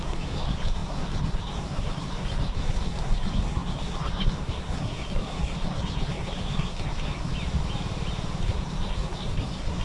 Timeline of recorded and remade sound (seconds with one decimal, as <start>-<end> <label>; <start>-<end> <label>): 0.0-7.3 remade; 7.3-8.4 recorded; 8.4-9.8 remade